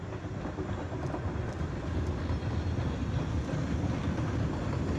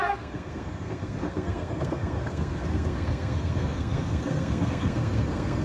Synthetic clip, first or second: second